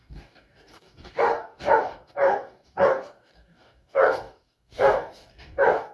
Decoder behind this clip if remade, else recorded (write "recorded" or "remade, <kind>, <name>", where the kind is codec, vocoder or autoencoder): remade, codec, DAC